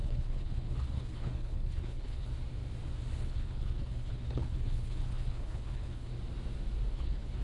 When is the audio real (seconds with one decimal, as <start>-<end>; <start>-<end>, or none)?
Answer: 2.3-3.2; 6.1-6.9